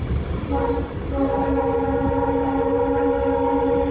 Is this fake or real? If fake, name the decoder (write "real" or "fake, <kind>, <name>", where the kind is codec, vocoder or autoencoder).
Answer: real